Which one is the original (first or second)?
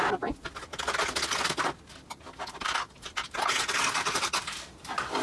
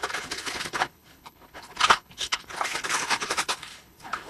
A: first